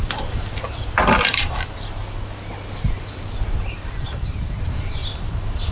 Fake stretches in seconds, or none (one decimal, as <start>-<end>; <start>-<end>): 0.0-2.0; 2.9-5.0